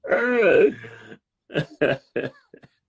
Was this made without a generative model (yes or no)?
yes